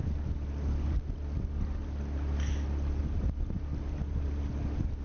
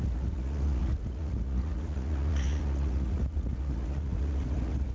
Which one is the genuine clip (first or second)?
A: first